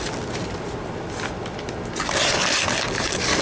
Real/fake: real